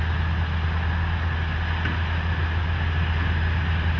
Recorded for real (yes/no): yes